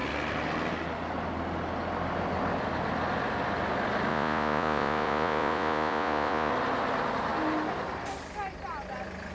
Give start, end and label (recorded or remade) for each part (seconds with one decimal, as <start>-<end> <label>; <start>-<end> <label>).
0.0-4.1 recorded; 4.1-6.5 remade; 6.5-9.3 recorded

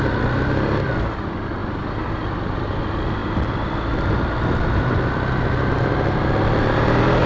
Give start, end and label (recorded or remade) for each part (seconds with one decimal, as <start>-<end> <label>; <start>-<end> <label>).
0.0-7.3 recorded

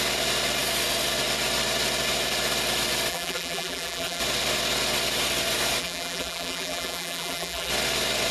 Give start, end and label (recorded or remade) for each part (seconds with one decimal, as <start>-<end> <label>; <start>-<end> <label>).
0.0-3.1 recorded; 3.1-4.2 remade; 4.2-5.8 recorded; 5.8-7.7 remade; 7.7-8.3 recorded

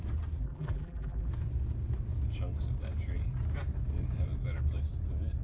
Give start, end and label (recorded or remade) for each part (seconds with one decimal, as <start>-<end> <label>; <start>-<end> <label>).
0.0-0.4 recorded; 0.4-1.3 remade; 1.3-5.4 recorded

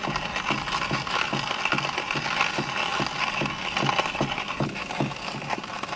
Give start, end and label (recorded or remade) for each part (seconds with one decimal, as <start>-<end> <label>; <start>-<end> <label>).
0.0-6.0 recorded